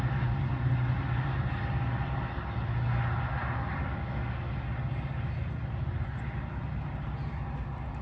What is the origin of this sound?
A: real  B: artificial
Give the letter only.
A